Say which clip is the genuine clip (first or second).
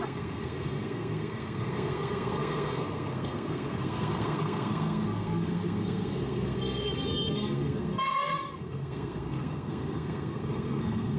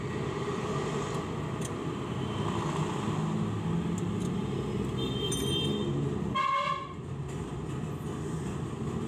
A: second